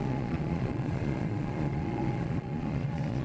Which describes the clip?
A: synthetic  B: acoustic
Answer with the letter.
A